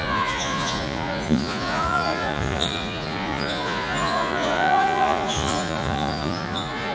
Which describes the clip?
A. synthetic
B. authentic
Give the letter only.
A